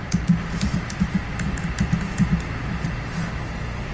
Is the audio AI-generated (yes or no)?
no